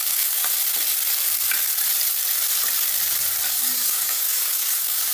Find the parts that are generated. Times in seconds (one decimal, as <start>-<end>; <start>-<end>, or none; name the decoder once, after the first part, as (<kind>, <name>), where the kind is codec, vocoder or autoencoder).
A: 0.0-0.4 (codec, DAC); 3.5-5.1